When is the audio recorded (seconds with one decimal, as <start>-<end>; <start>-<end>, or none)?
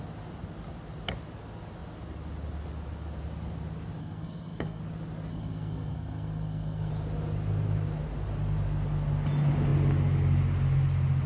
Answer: 0.0-4.0; 4.8-5.3; 6.9-11.3